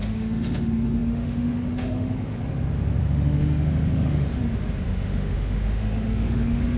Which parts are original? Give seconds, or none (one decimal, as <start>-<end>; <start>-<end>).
2.3-3.0; 4.3-4.9